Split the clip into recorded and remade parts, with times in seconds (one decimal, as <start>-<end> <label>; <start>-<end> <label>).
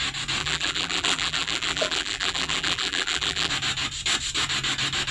0.0-0.4 recorded; 0.4-3.5 remade; 3.5-5.1 recorded